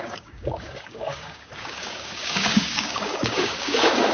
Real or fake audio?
fake